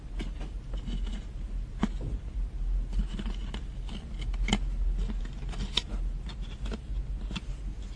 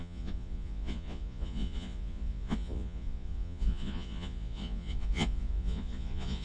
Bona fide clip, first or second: first